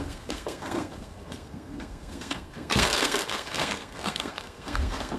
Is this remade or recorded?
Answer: remade